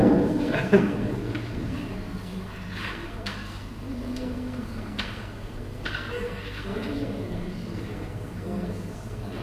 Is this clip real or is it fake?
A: fake